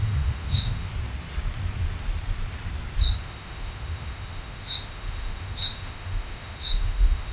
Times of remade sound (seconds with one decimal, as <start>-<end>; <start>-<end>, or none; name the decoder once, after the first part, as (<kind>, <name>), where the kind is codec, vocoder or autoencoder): 0.0-0.9 (autoencoder, DAC-VAE); 3.2-7.3